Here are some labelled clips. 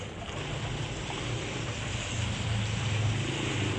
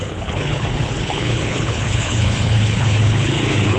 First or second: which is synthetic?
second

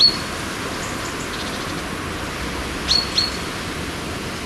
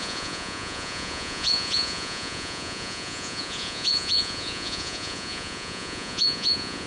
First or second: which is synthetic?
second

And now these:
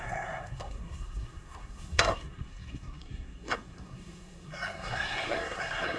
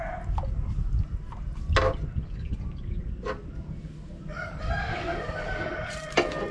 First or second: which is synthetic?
first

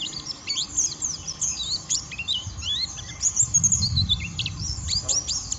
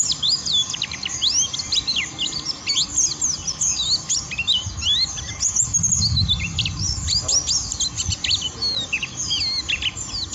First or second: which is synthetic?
first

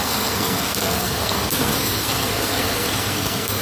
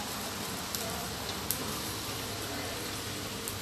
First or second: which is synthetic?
first